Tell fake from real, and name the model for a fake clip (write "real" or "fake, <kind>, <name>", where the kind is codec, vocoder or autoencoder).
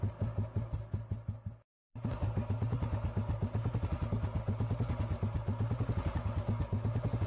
real